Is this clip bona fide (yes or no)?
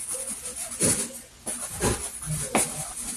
yes